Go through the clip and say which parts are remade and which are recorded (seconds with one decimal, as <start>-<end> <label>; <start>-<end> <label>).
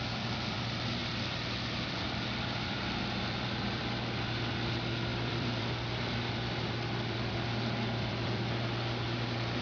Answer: 0.0-9.6 remade